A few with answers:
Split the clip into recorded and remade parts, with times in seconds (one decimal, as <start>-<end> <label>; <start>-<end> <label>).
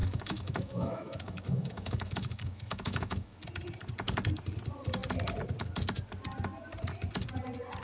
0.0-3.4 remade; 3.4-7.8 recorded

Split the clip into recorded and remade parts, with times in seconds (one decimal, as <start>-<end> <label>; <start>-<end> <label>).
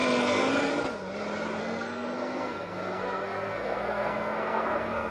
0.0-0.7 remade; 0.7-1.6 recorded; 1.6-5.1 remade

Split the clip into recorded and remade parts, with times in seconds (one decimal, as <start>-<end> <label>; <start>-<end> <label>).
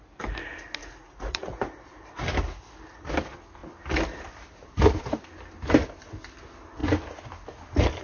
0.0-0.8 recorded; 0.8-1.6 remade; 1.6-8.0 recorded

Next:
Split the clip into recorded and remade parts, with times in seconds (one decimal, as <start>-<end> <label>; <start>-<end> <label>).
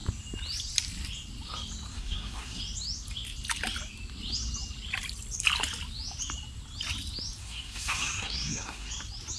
0.0-1.9 recorded; 1.9-2.6 remade; 2.6-7.4 recorded; 7.4-8.9 remade; 8.9-9.4 recorded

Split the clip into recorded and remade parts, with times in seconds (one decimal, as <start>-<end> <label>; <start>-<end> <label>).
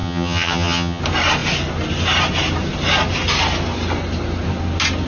0.0-1.0 remade; 1.0-5.1 recorded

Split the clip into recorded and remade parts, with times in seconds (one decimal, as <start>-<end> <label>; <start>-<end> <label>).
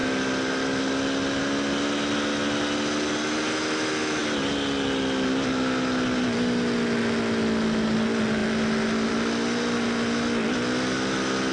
0.0-11.5 recorded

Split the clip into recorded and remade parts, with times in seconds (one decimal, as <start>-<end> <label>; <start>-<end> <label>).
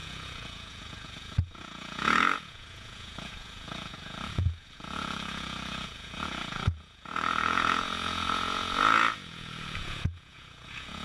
0.0-11.0 remade